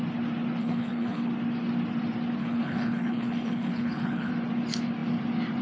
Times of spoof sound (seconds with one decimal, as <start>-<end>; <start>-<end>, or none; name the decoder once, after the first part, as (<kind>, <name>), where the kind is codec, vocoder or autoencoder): 0.6-1.3 (codec, HILCodec); 2.4-4.3